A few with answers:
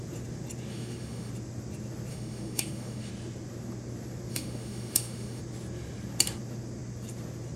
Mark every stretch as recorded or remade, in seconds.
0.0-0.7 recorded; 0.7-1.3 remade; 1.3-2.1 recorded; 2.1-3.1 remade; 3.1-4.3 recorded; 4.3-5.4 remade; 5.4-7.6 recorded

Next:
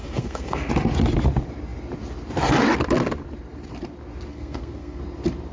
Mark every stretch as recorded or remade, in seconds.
0.0-0.7 remade; 0.7-4.3 recorded; 4.3-5.0 remade; 5.0-5.5 recorded

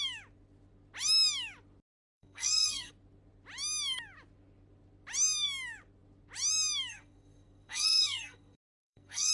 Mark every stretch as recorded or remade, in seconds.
0.0-2.1 recorded; 2.1-2.9 remade; 2.9-6.9 recorded; 6.9-9.3 remade

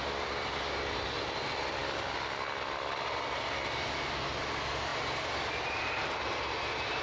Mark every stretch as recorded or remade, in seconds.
0.0-7.0 recorded

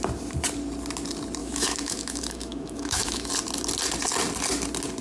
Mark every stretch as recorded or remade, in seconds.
0.0-1.4 recorded; 1.4-3.3 remade; 3.3-5.0 recorded

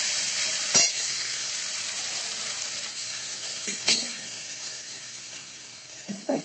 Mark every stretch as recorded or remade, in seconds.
0.0-0.9 recorded; 0.9-1.5 remade; 1.5-2.9 recorded; 2.9-6.4 remade

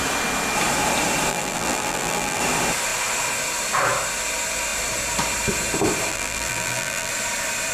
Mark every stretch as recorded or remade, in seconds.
0.0-1.3 recorded; 1.3-2.4 remade; 2.4-6.1 recorded; 6.1-7.1 remade; 7.1-7.7 recorded

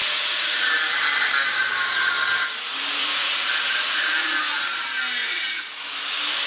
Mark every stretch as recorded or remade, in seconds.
0.0-0.6 remade; 0.6-3.0 recorded; 3.0-4.6 remade; 4.6-5.2 recorded; 5.2-5.8 remade; 5.8-6.5 recorded